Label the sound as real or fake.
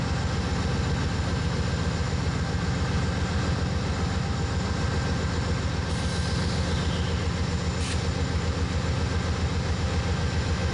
real